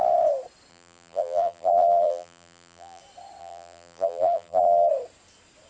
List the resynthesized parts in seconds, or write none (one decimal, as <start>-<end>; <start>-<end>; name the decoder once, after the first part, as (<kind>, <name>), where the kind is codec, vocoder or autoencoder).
0.7-3.0 (vocoder, BigVGAN v2); 3.4-4.9